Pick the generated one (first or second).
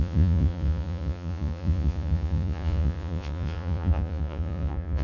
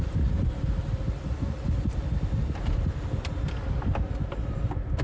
first